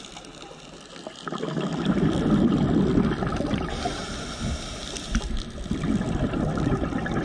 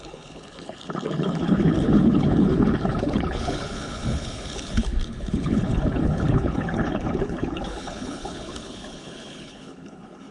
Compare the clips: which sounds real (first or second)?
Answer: first